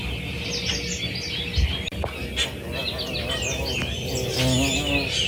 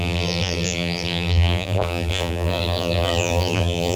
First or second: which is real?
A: first